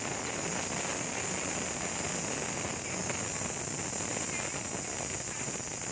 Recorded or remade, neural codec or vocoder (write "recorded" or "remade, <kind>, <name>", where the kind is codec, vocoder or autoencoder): recorded